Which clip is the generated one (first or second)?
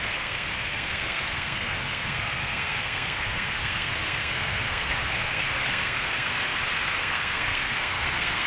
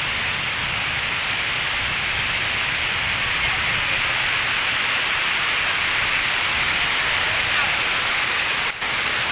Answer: first